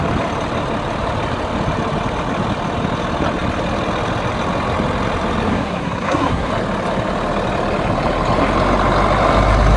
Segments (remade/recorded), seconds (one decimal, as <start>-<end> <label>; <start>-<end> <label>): 0.0-5.5 recorded; 5.5-6.5 remade; 6.5-9.8 recorded